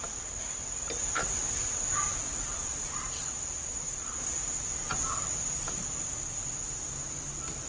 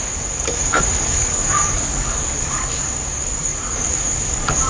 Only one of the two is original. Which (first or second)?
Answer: first